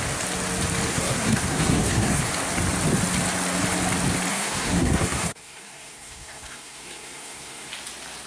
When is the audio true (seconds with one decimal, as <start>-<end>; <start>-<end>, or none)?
0.0-0.9; 2.3-4.3; 7.7-8.3